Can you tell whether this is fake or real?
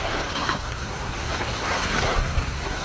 fake